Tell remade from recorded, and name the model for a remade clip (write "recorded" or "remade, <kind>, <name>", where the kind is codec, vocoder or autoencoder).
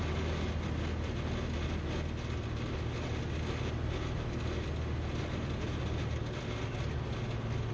recorded